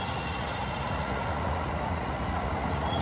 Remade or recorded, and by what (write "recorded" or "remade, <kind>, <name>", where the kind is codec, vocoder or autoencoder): remade, vocoder, Vocos